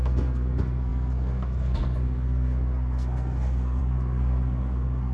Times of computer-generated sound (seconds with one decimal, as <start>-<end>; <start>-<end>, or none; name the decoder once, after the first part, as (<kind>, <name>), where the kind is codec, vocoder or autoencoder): 0.0-5.1 (codec, SNAC)